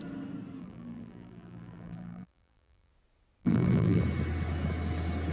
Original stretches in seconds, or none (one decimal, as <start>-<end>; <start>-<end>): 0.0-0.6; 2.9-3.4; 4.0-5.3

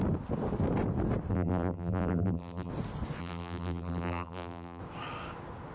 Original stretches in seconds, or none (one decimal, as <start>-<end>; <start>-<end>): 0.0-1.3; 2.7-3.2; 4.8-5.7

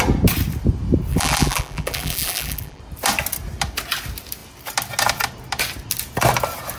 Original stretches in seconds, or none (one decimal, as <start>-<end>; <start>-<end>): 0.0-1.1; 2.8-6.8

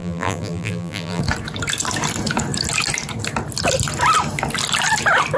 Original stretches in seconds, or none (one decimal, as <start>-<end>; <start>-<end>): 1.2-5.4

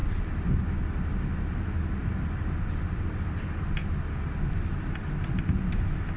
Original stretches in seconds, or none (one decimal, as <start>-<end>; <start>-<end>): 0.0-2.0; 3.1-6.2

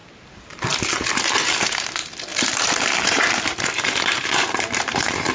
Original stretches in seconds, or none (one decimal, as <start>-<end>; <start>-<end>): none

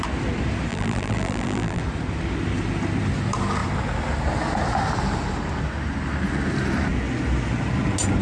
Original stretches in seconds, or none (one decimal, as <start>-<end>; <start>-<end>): 0.0-0.7; 1.8-8.2